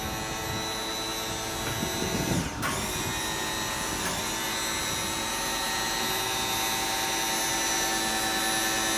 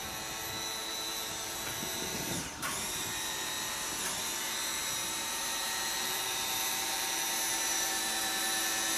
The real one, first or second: first